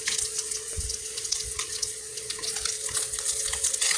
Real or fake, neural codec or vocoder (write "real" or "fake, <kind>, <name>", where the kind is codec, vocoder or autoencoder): fake, vocoder, Vocos